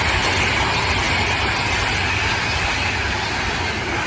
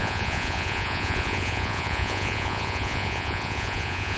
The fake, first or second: second